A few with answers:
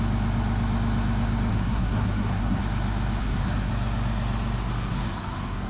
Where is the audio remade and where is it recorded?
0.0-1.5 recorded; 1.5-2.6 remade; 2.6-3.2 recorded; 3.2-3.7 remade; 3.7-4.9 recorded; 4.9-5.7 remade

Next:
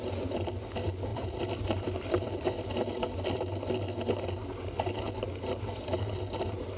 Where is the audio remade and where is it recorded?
0.0-1.1 recorded; 1.1-3.5 remade; 3.5-6.8 recorded

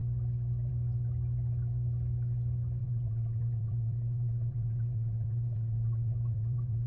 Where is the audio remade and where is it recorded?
0.0-2.8 recorded; 2.8-6.9 remade

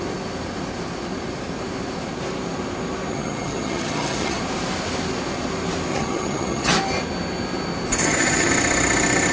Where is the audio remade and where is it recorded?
0.0-3.1 recorded; 3.1-4.4 remade; 4.4-5.9 recorded; 5.9-6.7 remade; 6.7-8.0 recorded; 8.0-8.5 remade; 8.5-9.3 recorded

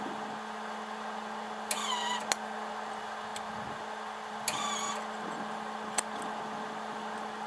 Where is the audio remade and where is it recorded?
0.0-7.5 recorded

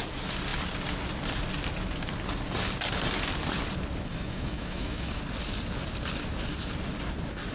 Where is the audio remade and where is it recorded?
0.0-4.1 recorded; 4.1-5.2 remade; 5.2-7.5 recorded

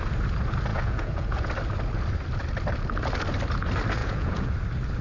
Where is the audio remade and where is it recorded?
0.0-0.7 recorded; 0.7-1.5 remade; 1.5-4.0 recorded; 4.0-4.5 remade; 4.5-5.0 recorded